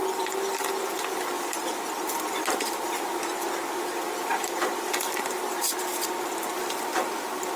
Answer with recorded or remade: recorded